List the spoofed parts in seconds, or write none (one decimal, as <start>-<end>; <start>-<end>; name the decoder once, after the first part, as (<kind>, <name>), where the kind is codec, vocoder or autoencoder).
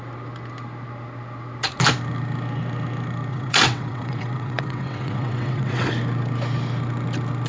3.3-5.9 (vocoder, WaveNeXt)